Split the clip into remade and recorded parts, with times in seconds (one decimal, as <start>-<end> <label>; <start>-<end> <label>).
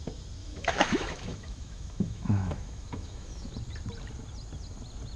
0.0-0.4 recorded; 0.4-3.5 remade; 3.5-5.2 recorded